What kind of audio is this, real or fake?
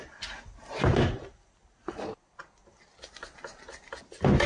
real